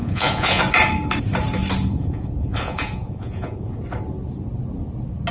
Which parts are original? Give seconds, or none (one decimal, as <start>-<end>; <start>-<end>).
0.6-1.9; 3.8-5.3